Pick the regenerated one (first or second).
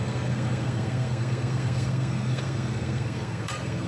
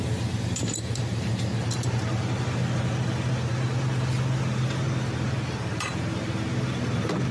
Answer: first